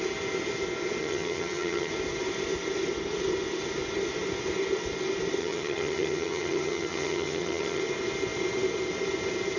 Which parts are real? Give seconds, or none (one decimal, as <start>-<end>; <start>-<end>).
0.0-1.0; 1.9-5.4; 7.8-9.6